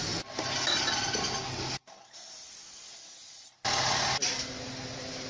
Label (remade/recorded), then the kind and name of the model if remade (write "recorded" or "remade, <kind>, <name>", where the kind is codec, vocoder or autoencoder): recorded